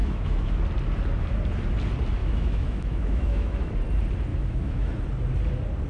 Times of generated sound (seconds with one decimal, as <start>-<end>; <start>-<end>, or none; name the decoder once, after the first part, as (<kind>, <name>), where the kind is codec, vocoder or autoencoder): 0.0-0.6 (autoencoder, DAC-VAE); 2.2-3.7; 4.3-4.9